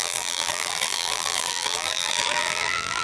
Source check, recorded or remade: remade